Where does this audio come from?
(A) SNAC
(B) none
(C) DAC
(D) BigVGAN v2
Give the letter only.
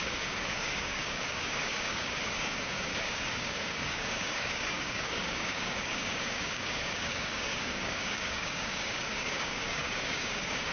C